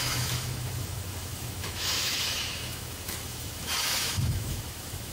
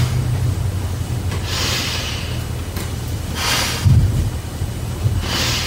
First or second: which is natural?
second